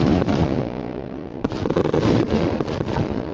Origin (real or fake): fake